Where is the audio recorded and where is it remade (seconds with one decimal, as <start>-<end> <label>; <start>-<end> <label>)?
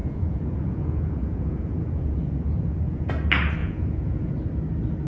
0.0-3.1 remade; 3.1-3.6 recorded; 3.6-4.3 remade; 4.3-5.1 recorded